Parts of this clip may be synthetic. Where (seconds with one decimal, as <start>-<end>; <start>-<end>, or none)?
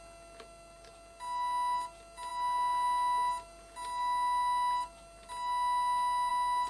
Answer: none